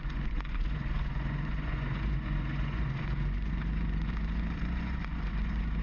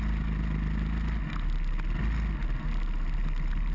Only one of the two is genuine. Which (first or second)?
second